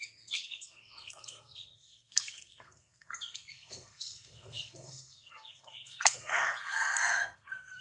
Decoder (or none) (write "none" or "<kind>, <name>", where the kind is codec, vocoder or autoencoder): codec, SNAC